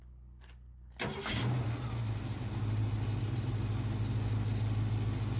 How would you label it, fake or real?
real